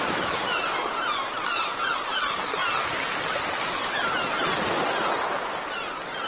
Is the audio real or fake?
real